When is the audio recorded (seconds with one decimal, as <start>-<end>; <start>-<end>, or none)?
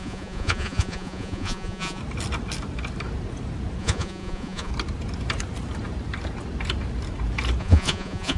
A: 2.0-3.8; 4.7-7.6